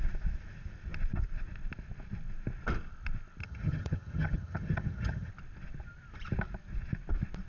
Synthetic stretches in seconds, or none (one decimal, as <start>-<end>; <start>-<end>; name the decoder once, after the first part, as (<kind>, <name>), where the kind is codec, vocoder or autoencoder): 3.4-5.3 (vocoder, HiFi-GAN)